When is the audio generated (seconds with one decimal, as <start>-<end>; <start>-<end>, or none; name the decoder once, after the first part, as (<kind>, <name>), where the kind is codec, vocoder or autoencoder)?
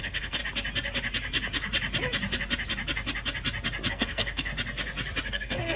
0.0-0.4 (codec, SNAC); 3.9-4.5; 5.3-5.8